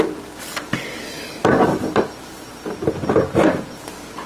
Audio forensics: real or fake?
real